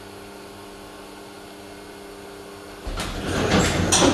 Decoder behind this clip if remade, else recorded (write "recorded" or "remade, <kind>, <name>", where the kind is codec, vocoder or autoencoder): recorded